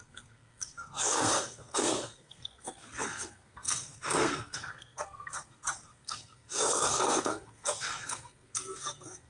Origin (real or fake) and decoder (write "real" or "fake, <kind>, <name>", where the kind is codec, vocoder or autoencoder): fake, codec, SNAC